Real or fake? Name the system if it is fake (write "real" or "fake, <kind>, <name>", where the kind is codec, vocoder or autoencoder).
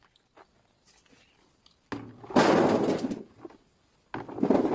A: real